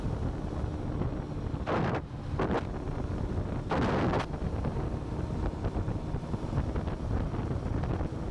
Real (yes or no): yes